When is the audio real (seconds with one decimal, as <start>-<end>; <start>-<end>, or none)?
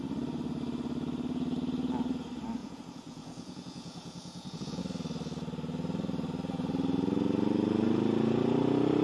0.0-2.6; 4.8-9.0